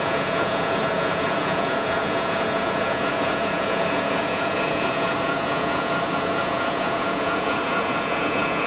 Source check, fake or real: fake